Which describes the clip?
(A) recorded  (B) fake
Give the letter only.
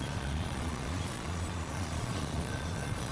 B